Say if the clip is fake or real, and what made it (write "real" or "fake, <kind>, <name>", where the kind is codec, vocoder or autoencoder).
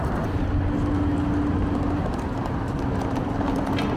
real